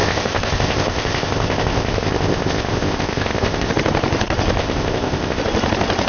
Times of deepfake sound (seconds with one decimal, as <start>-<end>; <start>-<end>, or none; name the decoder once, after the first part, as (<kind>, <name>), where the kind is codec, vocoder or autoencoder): 0.0-3.7 (codec, ZipCodec); 4.6-5.4